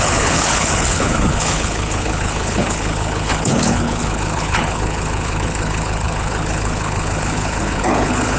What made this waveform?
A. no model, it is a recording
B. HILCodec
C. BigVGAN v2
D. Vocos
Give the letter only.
B